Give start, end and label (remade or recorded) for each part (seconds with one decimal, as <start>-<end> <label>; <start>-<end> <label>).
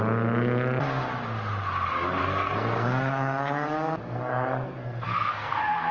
0.0-2.2 recorded; 2.2-5.9 remade